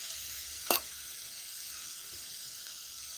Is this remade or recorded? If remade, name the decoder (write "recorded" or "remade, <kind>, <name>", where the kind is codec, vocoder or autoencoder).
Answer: remade, codec, SNAC